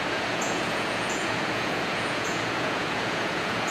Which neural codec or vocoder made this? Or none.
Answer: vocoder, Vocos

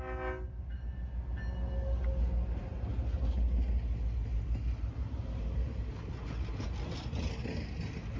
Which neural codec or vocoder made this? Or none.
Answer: none